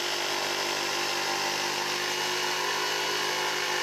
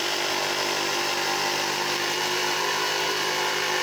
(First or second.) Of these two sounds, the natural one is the first